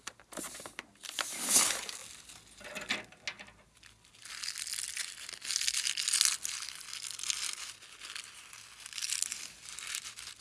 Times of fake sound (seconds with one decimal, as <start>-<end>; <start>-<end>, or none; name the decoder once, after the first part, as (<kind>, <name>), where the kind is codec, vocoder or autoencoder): none